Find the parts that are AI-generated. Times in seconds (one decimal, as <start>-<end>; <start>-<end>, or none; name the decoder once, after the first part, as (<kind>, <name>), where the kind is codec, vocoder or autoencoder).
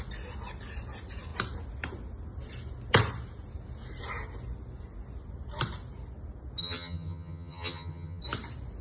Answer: 6.6-8.2 (vocoder, HiFi-GAN)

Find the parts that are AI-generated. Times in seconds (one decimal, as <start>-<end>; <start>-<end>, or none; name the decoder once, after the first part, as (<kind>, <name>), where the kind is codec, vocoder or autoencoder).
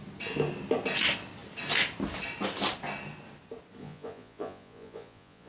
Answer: 3.8-5.5 (vocoder, Vocos)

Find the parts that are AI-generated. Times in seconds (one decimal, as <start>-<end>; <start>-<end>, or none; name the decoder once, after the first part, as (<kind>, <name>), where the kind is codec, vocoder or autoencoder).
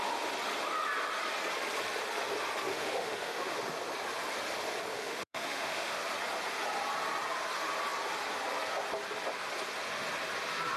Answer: 2.7-3.6 (autoencoder, DAC-VAE); 4.9-6.0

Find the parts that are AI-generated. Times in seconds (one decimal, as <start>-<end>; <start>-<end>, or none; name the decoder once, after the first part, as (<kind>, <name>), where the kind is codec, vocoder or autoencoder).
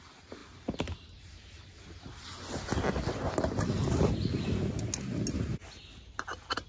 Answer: none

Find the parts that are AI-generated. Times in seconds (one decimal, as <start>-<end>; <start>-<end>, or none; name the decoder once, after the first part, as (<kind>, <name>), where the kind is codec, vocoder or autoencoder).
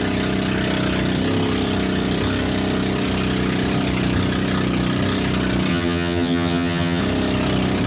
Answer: 5.7-7.0 (vocoder, HiFi-GAN)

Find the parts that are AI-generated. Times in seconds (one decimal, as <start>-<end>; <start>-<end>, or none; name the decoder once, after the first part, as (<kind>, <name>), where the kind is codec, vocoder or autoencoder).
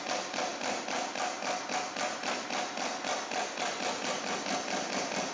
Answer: none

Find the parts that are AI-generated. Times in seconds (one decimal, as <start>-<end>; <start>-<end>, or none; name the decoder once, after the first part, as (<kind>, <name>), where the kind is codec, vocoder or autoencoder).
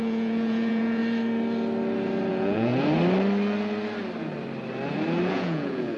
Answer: 0.0-1.0 (vocoder, Vocos); 2.3-2.7; 5.3-6.0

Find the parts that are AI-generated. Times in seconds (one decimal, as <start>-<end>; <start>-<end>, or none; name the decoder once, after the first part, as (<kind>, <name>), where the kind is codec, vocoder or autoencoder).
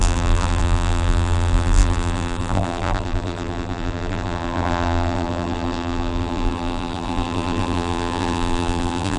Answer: 0.0-9.2 (vocoder, BigVGAN v2)